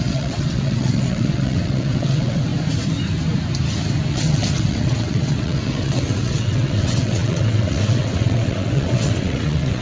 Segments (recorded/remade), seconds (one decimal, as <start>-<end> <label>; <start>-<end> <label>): 0.0-2.5 remade; 2.5-4.1 recorded; 4.1-9.8 remade